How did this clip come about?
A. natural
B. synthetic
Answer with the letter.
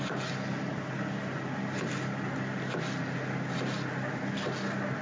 A